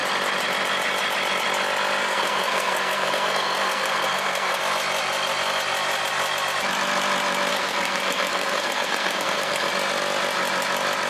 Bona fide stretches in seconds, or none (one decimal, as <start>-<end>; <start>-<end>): 0.0-2.0; 4.6-7.5; 9.7-11.1